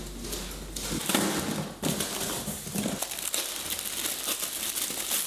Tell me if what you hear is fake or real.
real